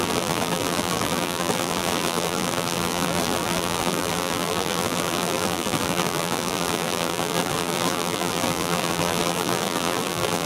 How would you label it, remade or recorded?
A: remade